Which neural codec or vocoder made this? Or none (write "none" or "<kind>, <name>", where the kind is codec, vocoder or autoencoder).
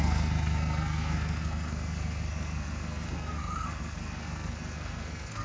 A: codec, SNAC